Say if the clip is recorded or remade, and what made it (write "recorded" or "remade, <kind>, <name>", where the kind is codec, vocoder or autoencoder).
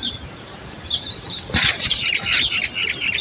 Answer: remade, vocoder, BigVGAN v2